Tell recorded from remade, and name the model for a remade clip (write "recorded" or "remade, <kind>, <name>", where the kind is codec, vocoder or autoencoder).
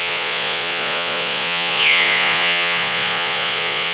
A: remade, vocoder, Vocos